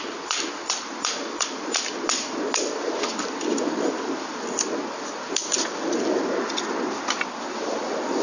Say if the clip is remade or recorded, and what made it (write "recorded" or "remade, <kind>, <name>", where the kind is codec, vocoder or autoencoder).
remade, vocoder, BigVGAN v2